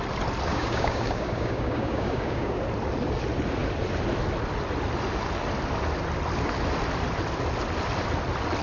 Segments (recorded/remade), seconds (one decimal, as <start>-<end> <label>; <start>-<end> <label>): 0.0-0.5 recorded; 0.5-2.6 remade; 2.6-8.6 recorded